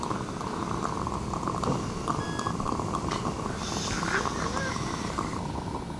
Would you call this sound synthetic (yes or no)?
no